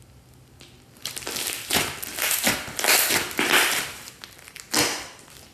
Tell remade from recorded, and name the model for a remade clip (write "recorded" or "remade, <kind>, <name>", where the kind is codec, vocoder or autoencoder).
recorded